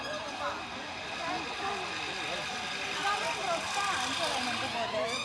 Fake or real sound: real